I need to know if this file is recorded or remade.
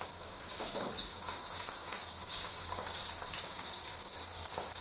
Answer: remade